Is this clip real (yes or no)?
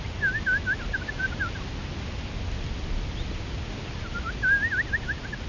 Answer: yes